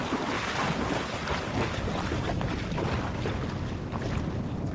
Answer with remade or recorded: recorded